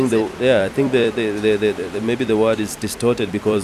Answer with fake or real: fake